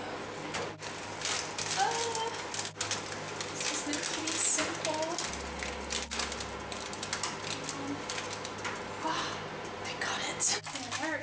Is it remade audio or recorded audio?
recorded